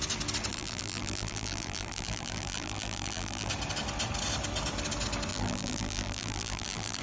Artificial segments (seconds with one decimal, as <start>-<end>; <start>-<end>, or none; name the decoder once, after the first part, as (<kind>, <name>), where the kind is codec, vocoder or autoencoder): 0.5-3.5 (vocoder, BigVGAN v2); 5.3-7.0